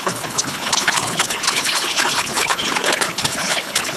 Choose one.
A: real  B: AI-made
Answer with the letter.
B